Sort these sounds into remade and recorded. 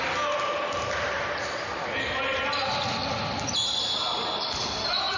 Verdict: recorded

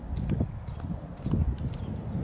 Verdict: recorded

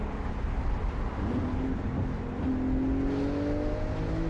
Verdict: recorded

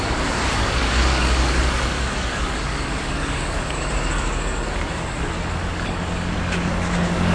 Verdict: remade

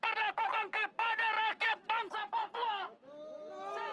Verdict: recorded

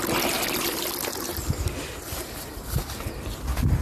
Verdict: recorded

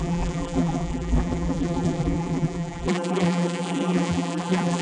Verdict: remade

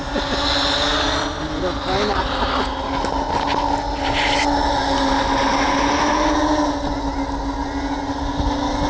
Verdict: recorded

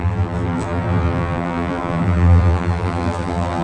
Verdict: remade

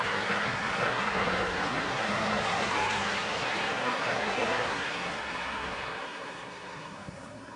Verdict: remade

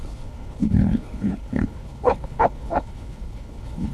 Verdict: remade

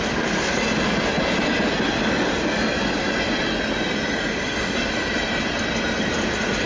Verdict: recorded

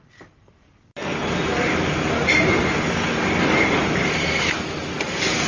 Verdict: recorded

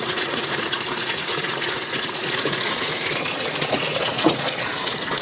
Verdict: remade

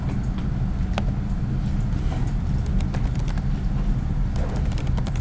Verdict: recorded